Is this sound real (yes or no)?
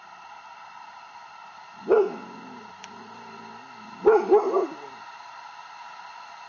yes